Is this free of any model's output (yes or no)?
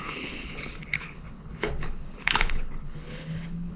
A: no